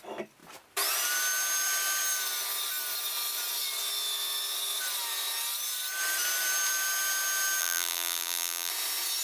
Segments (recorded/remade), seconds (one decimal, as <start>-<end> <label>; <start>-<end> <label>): 0.0-7.6 recorded; 7.6-8.7 remade; 8.7-9.2 recorded